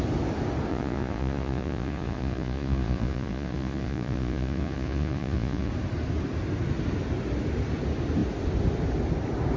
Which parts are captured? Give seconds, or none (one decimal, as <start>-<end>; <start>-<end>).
0.0-0.7; 5.7-9.6